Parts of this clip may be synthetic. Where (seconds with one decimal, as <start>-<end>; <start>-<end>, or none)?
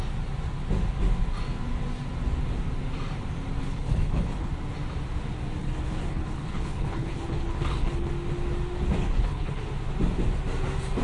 3.6-4.5; 5.6-8.1; 9.0-9.6